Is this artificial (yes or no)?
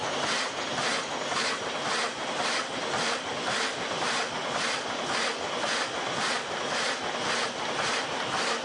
no